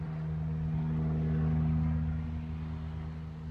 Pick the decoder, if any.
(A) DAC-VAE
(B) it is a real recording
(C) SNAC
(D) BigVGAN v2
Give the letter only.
B